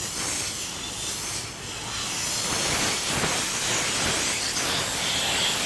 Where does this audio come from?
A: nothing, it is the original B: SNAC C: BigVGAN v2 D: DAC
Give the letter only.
A